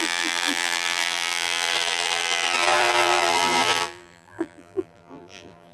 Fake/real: fake